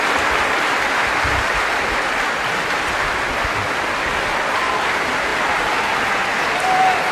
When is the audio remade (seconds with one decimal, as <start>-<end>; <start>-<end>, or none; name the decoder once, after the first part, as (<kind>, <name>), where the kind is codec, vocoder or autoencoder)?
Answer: none